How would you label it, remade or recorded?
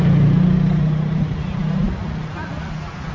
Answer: recorded